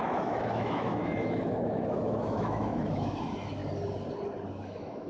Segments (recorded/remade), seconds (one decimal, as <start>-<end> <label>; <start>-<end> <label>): 0.0-3.6 remade; 3.6-4.5 recorded; 4.5-5.1 remade